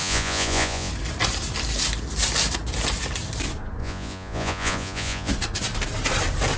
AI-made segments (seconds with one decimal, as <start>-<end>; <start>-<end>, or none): 0.0-0.9; 3.8-5.3